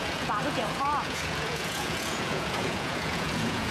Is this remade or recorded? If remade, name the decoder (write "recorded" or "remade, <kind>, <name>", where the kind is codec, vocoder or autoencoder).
remade, vocoder, Vocos